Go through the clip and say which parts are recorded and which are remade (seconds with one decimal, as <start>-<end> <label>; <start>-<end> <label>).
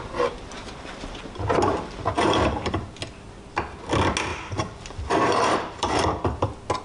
0.0-4.3 recorded; 4.3-6.1 remade; 6.1-6.8 recorded